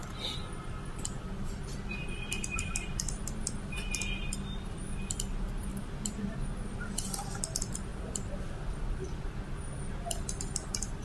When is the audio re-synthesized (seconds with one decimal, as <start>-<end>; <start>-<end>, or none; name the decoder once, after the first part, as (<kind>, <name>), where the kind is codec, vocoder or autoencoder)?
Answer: 5.7-6.3 (vocoder, BigVGAN v2)